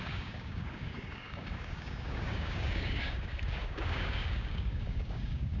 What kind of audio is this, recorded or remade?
remade